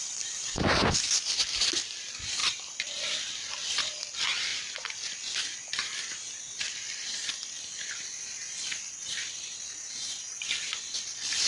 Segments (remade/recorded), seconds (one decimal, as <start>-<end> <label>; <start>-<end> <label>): 0.0-11.5 recorded